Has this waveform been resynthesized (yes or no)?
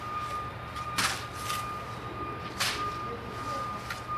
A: no